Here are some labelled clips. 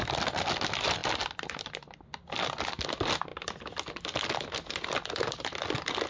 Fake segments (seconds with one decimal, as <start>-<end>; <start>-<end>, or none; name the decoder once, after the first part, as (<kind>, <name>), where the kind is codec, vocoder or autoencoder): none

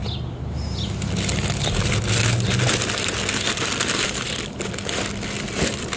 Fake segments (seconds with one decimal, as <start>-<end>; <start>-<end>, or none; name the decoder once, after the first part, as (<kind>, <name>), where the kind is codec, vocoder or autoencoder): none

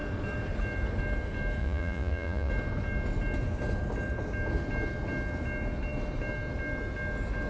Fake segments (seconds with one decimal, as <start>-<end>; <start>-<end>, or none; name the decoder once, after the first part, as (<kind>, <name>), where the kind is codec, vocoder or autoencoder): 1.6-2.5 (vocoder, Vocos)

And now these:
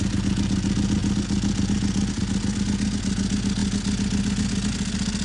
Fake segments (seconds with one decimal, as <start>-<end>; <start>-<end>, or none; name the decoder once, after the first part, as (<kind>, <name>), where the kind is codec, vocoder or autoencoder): none

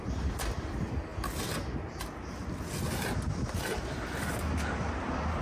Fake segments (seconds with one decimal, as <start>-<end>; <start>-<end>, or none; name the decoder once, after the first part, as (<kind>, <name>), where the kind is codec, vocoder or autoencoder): none

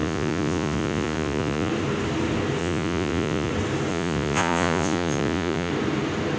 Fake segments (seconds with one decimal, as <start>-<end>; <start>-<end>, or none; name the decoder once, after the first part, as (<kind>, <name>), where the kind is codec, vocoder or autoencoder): 0.0-1.7 (vocoder, Vocos); 2.6-3.5; 3.9-5.7